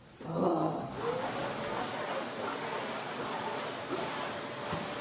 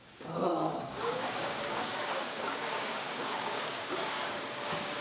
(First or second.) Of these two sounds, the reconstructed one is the second